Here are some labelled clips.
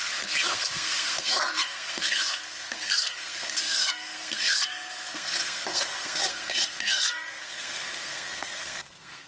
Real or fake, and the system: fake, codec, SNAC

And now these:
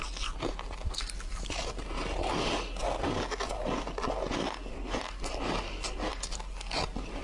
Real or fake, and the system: real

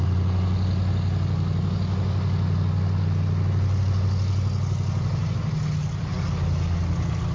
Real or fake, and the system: real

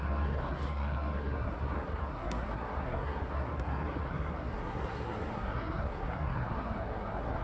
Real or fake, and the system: fake, codec, SNAC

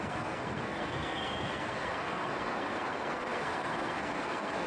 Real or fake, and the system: fake, codec, SNAC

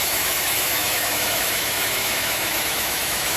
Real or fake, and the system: fake, autoencoder, DAC-VAE